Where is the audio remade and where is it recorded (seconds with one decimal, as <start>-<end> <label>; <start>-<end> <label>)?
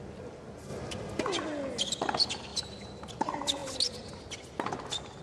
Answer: 0.0-5.2 recorded